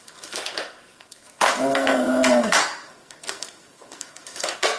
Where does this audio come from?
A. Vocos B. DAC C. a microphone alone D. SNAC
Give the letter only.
D